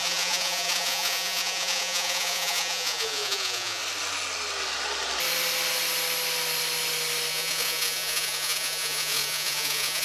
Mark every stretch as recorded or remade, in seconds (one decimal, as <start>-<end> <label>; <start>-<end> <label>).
0.0-3.8 remade; 3.8-7.3 recorded; 7.3-10.0 remade